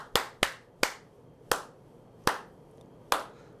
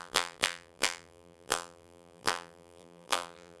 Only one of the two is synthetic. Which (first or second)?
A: second